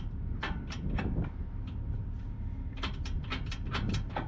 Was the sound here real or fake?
real